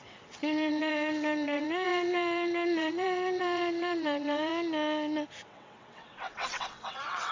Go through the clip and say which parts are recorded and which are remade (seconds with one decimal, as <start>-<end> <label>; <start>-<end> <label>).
0.0-4.5 remade; 4.5-5.4 recorded; 5.4-7.3 remade